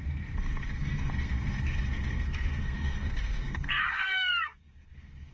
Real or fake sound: fake